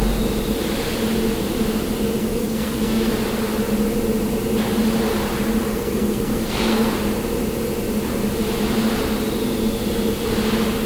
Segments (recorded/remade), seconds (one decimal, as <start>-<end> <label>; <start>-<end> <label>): 0.0-2.2 recorded; 2.2-3.1 remade; 3.1-5.7 recorded; 5.7-6.9 remade; 6.9-10.9 recorded